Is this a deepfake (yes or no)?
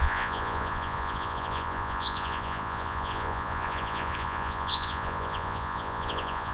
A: yes